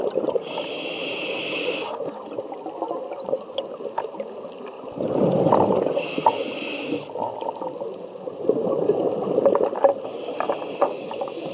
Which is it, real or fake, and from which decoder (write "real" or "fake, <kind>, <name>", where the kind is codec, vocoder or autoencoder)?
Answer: real